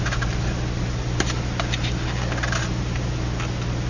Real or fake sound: real